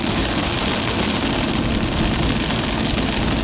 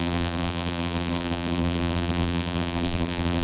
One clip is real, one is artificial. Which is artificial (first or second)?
second